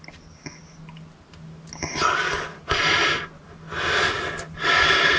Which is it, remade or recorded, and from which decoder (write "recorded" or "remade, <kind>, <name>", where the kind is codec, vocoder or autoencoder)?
recorded